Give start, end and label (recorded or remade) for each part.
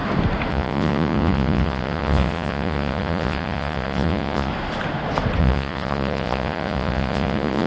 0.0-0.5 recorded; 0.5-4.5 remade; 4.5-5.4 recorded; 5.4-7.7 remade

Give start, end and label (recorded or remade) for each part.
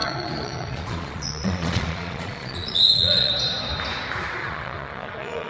0.0-3.3 remade; 3.3-4.4 recorded; 4.4-5.5 remade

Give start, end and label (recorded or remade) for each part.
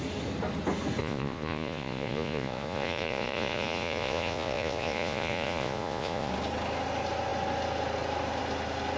0.0-1.0 recorded; 1.0-6.3 remade; 6.3-9.0 recorded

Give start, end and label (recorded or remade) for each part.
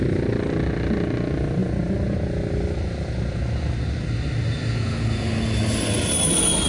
0.0-6.7 recorded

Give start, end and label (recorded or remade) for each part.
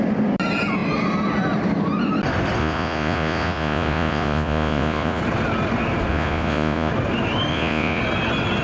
0.0-2.6 recorded; 2.6-5.2 remade; 5.2-6.1 recorded; 6.1-6.9 remade; 6.9-7.5 recorded; 7.5-8.0 remade; 8.0-8.6 recorded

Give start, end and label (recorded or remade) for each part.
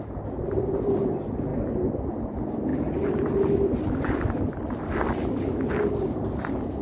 0.0-6.8 recorded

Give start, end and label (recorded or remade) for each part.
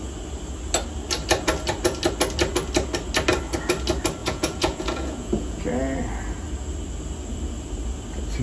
0.0-4.2 recorded; 4.2-5.6 remade; 5.6-8.4 recorded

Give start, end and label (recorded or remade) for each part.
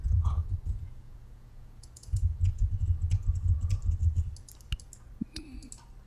0.0-3.7 remade; 3.7-6.1 recorded